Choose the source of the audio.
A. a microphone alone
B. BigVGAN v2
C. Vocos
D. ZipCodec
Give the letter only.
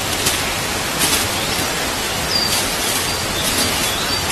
A